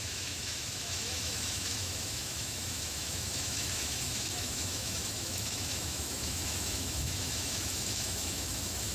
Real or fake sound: fake